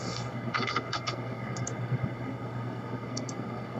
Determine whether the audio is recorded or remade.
remade